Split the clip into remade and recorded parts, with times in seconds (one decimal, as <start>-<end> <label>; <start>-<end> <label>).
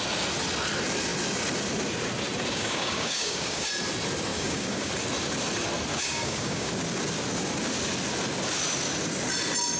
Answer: 0.0-2.5 recorded; 2.5-3.7 remade; 3.7-4.3 recorded; 4.3-4.9 remade; 4.9-5.9 recorded; 5.9-6.7 remade; 6.7-9.8 recorded